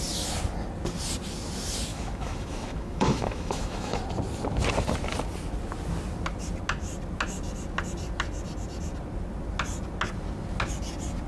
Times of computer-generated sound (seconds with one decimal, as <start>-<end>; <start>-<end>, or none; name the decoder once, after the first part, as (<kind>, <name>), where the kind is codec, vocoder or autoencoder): 1.9-4.0 (autoencoder, DAC-VAE)